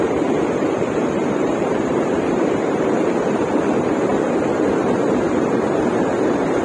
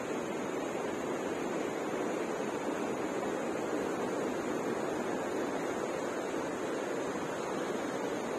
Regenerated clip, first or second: first